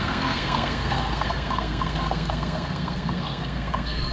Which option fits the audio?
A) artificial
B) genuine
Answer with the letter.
A